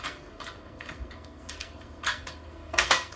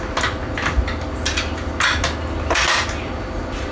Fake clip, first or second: first